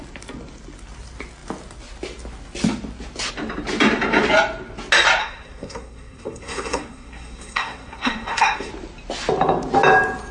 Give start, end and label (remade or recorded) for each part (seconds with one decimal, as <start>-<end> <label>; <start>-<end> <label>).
0.0-5.2 recorded; 5.2-8.7 remade; 8.7-10.3 recorded